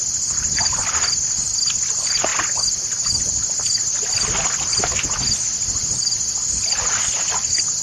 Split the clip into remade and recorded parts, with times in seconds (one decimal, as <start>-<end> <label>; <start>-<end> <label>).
0.0-7.8 recorded